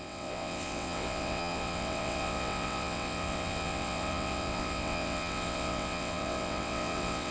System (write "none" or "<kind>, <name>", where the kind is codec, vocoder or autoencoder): vocoder, WaveNeXt